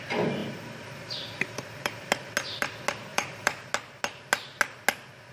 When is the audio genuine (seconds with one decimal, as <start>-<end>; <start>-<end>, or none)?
0.0-0.4; 2.1-3.1; 3.7-5.3